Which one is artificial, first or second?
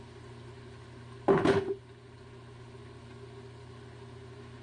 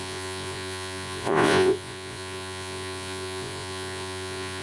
second